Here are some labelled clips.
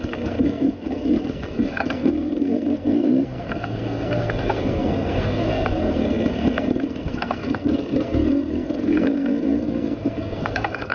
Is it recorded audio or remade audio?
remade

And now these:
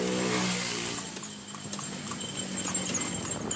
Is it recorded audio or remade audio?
recorded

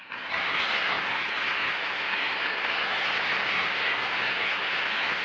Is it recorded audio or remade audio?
remade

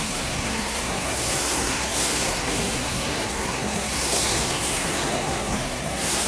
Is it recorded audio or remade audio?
remade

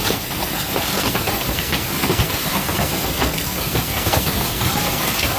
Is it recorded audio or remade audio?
remade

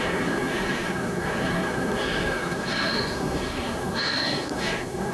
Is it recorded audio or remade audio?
remade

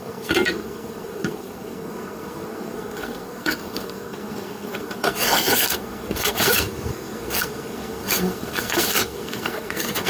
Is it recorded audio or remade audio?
remade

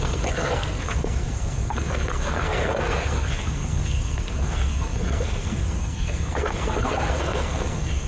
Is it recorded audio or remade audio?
remade